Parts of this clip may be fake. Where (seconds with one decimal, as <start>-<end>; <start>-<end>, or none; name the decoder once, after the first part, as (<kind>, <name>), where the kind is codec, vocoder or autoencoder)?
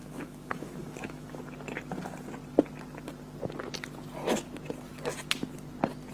0.0-1.4 (autoencoder, DAC-VAE)